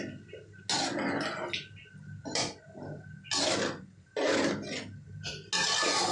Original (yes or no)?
yes